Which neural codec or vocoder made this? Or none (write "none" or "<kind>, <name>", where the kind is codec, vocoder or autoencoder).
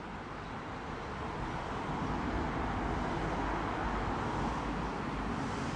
none